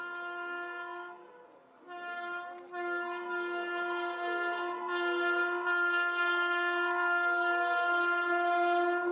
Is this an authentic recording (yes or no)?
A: yes